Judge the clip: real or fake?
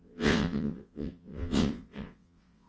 fake